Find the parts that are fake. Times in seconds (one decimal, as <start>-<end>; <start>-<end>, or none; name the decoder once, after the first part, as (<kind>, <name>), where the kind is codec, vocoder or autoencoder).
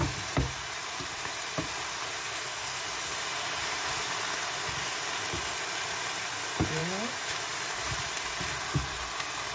2.2-2.8 (codec, SNAC)